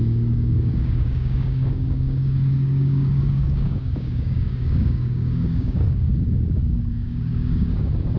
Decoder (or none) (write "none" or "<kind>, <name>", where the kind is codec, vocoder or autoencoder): codec, DAC